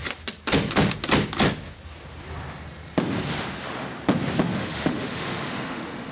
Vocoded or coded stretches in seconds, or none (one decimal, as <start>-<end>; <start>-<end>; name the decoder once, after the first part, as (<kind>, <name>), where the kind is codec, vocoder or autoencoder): 4.6-6.1 (autoencoder, DAC-VAE)